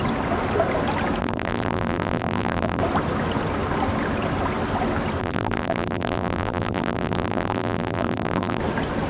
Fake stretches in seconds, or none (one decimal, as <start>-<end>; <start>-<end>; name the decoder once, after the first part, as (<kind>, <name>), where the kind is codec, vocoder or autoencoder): 1.2-2.8 (vocoder, BigVGAN v2); 5.2-8.6